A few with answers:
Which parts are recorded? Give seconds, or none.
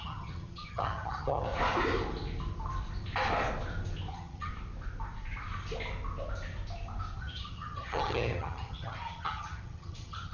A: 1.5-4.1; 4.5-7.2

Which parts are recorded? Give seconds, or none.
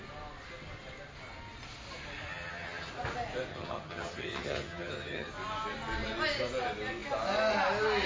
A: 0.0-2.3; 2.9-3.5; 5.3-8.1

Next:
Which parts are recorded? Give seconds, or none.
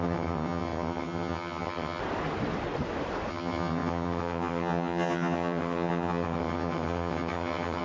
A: 2.0-3.3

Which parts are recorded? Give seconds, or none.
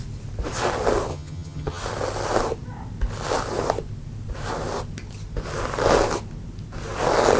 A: 0.0-1.1; 1.8-7.4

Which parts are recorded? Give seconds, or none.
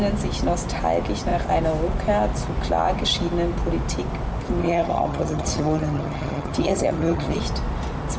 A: 0.0-4.6; 7.4-8.2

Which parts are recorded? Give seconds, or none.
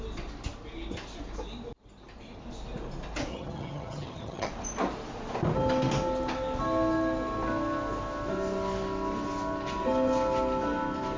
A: 0.0-3.3; 4.5-11.2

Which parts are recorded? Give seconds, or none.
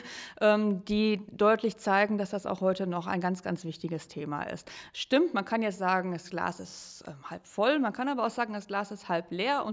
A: 0.0-9.7